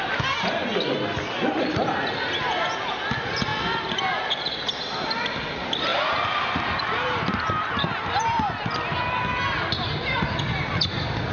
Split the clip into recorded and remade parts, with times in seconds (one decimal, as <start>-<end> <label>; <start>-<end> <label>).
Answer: 0.0-5.9 recorded; 5.9-8.6 remade; 8.6-11.3 recorded